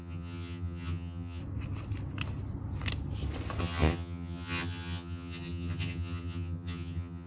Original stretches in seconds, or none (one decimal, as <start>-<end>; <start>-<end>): 1.4-3.6